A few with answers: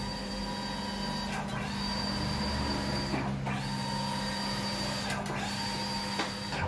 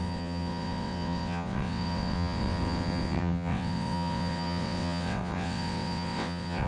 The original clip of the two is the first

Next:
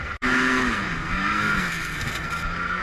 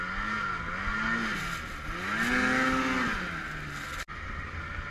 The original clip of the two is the second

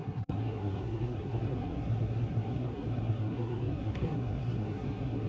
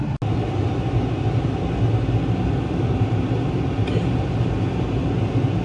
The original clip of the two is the second